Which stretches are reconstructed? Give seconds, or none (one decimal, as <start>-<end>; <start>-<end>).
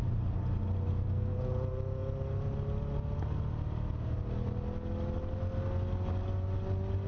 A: 0.9-1.4